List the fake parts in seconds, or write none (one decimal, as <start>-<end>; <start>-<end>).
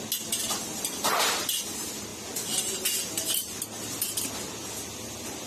none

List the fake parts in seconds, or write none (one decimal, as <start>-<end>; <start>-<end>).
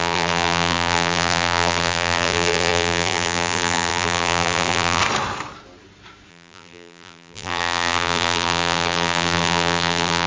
0.0-5.0; 6.3-10.3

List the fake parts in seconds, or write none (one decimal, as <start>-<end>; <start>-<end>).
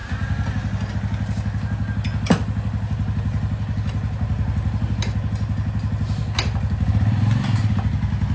none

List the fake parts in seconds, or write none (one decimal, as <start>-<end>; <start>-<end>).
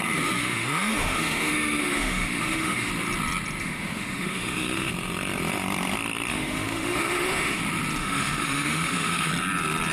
0.4-2.9; 3.6-4.9; 6.3-7.6; 8.0-9.3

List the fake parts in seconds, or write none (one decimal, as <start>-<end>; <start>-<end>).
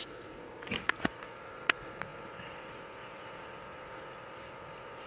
0.0-5.1